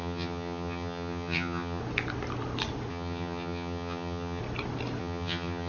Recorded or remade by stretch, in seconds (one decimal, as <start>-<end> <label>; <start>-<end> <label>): 0.0-1.8 remade; 1.8-2.9 recorded; 2.9-4.4 remade; 4.4-5.0 recorded; 5.0-5.7 remade